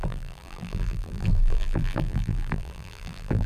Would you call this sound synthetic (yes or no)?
yes